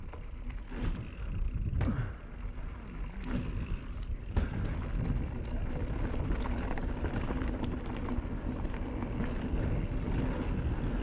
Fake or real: real